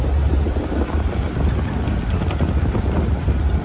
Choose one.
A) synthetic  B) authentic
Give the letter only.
B